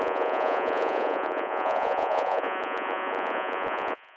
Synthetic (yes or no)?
yes